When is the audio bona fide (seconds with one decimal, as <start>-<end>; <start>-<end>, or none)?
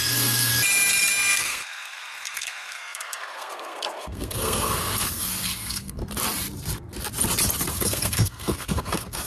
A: 0.5-1.4; 6.0-7.7